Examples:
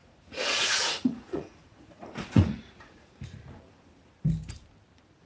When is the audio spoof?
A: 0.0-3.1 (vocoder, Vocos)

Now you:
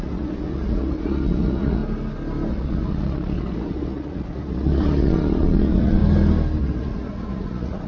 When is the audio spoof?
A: 0.0-1.8 (vocoder, Vocos); 2.5-6.0; 6.6-7.9

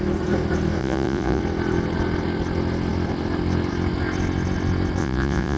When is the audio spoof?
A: 0.8-1.4 (vocoder, Vocos); 5.0-5.6

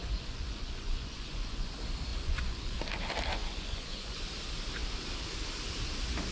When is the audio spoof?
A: 0.0-1.7 (vocoder, Vocos); 2.1-2.8; 3.4-4.2

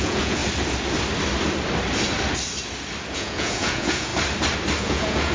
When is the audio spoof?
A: 0.0-0.4 (vocoder, Vocos); 3.1-4.1; 4.8-5.3

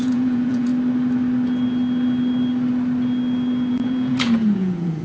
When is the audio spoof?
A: 0.0-0.7 (vocoder, Vocos); 3.7-5.0